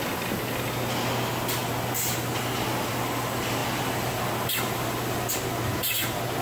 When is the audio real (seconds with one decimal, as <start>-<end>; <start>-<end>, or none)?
0.0-6.4